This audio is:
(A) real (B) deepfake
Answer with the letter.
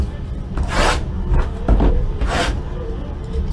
A